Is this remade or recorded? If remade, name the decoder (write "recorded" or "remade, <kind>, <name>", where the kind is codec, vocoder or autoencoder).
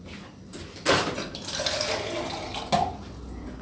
recorded